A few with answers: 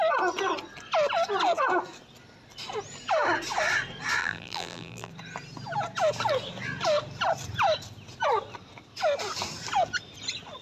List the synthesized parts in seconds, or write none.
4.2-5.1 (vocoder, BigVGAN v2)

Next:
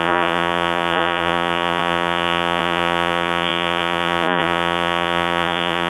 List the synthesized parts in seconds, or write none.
0.0-5.9 (vocoder, BigVGAN v2)